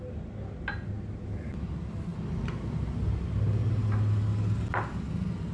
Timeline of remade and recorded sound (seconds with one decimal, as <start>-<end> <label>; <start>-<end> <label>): 0.0-5.5 recorded